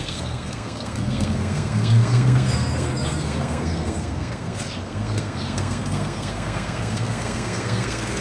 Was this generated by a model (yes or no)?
yes